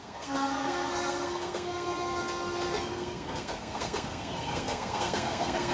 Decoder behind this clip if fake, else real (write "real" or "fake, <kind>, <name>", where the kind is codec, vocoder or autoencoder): fake, codec, SNAC